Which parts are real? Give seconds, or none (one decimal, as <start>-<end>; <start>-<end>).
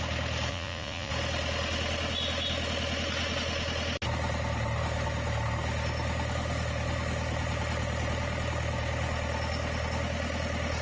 0.0-0.5; 1.1-10.8